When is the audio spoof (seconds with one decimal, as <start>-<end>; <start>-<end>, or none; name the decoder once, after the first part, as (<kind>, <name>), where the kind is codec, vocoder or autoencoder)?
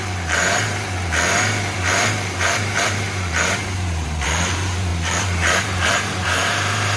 0.0-7.0 (vocoder, BigVGAN v2)